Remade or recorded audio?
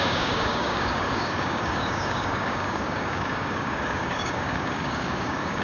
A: remade